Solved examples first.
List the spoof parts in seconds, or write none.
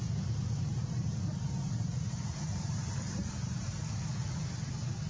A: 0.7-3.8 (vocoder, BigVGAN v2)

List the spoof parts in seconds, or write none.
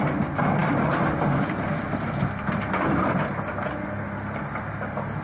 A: none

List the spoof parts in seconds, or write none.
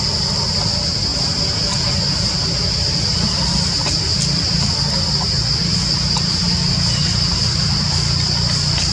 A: none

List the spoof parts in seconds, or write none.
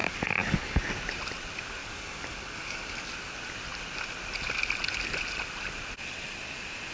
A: 0.0-0.8 (codec, DAC); 1.8-3.1